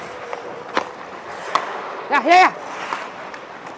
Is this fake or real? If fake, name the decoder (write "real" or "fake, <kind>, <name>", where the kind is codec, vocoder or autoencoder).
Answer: real